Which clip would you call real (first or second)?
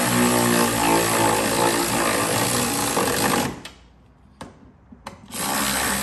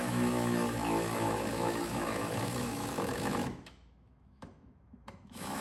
first